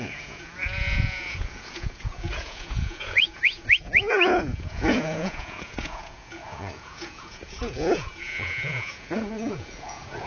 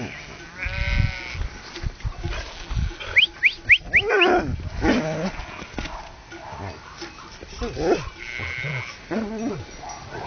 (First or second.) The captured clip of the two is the second